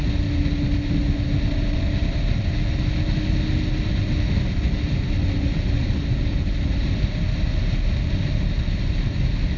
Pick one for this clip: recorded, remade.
recorded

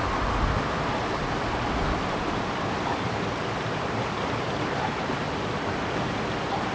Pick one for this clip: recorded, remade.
recorded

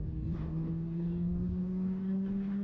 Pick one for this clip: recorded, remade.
remade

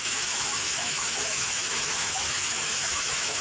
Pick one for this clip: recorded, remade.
remade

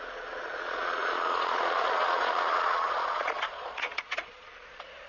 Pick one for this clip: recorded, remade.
remade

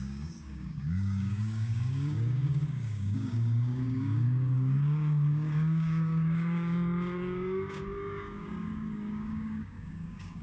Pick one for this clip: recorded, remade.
remade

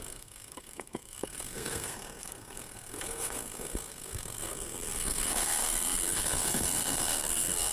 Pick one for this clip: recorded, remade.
remade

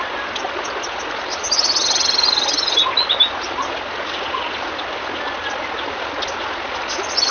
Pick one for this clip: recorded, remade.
recorded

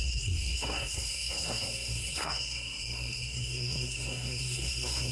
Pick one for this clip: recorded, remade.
remade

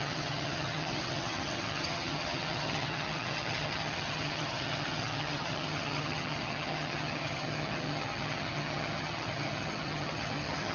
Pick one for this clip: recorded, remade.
remade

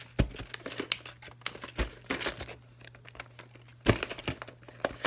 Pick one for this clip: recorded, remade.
recorded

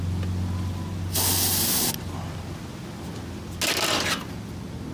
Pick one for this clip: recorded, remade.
recorded